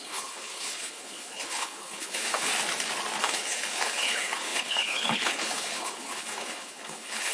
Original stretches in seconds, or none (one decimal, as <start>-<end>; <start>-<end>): 2.5-3.2